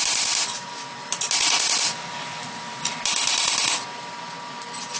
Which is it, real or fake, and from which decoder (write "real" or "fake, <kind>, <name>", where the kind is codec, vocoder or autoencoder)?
real